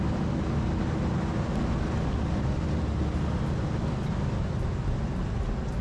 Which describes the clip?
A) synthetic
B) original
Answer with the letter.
B